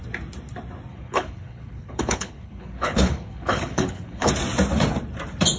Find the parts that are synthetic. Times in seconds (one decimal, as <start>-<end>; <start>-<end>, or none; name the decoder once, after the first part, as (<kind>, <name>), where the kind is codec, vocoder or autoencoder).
0.9-4.3 (codec, HILCodec)